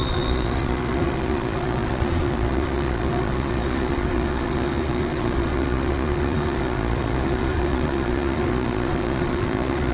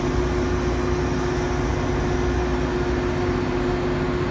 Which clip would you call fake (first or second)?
first